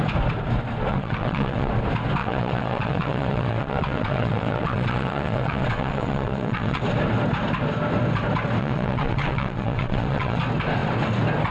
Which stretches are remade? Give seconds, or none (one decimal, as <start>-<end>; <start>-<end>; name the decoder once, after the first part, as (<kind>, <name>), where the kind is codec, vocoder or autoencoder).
0.9-1.7 (vocoder, WaveNeXt); 2.2-6.8; 8.6-10.4